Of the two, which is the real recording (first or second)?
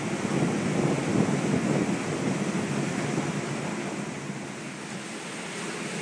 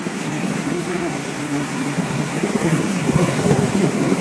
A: first